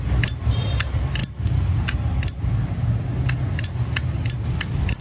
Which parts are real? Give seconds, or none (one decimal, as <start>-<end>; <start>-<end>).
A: 0.0-5.0